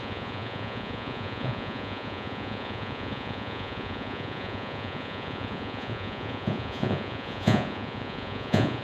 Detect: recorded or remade remade